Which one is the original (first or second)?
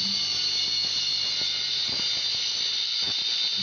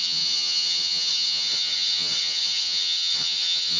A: first